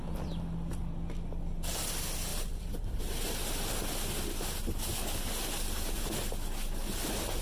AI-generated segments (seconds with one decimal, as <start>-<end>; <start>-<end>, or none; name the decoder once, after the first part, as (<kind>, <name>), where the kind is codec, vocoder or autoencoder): 2.3-3.0 (vocoder, BigVGAN v2)